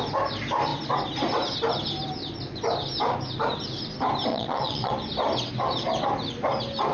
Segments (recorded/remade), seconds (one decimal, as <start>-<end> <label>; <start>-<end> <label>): 0.0-4.3 recorded; 4.3-4.9 remade; 4.9-6.9 recorded